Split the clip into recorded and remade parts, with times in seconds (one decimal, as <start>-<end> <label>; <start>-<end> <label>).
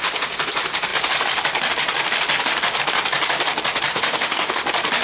0.0-3.9 recorded; 3.9-4.5 remade; 4.5-5.0 recorded